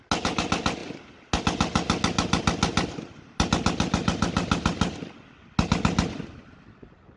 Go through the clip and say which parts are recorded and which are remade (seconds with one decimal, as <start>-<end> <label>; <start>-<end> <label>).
0.0-7.2 recorded